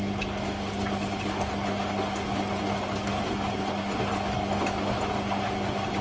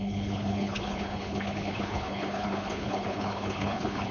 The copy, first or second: second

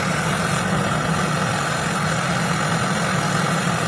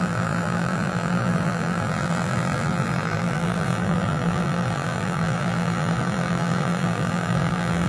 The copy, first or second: second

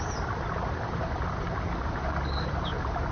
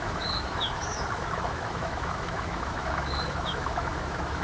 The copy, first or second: second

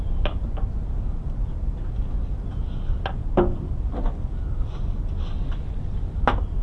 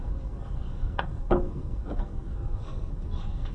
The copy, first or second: second